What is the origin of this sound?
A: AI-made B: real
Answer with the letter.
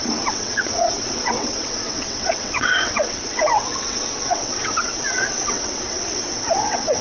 A